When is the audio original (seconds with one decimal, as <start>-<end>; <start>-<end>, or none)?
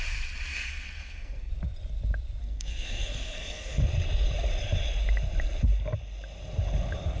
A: 0.0-0.5; 1.5-2.4; 3.8-7.2